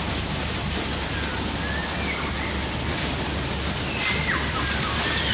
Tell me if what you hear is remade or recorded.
recorded